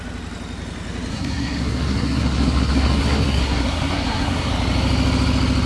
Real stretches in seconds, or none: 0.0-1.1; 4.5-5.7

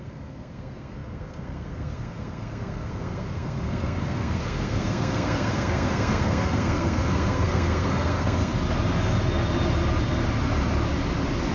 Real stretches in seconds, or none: 8.5-11.5

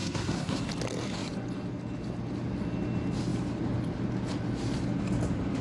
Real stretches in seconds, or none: 0.6-5.6